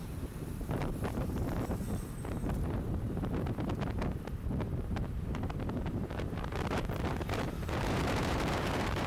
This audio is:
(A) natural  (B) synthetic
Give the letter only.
B